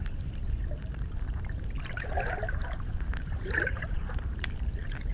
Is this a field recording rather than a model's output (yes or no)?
no